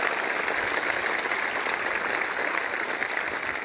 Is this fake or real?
real